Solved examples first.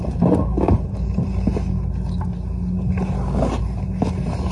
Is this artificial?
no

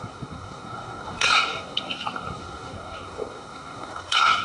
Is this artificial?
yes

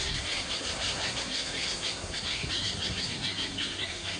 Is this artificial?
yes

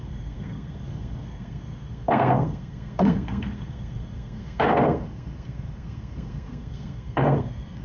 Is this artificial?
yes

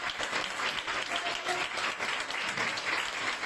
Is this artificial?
no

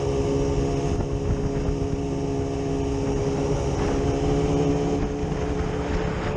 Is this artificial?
no